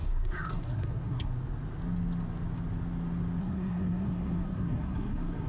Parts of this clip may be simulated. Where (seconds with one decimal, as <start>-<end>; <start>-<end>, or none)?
0.0-1.3; 3.4-5.5

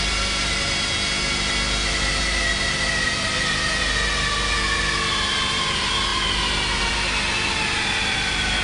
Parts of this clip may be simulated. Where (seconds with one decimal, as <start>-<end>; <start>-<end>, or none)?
none

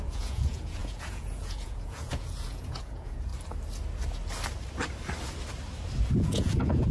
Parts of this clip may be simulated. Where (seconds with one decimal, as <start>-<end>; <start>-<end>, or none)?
0.0-3.3; 6.1-6.9

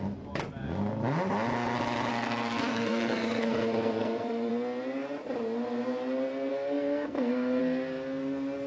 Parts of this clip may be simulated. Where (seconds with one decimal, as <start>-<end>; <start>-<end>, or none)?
2.1-4.5; 6.5-7.6

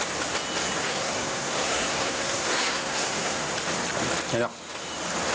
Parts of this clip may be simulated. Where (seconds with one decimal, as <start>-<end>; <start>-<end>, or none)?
0.8-3.5

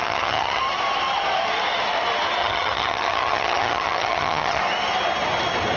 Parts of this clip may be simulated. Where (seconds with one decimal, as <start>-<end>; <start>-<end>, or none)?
0.0-0.6; 2.4-4.6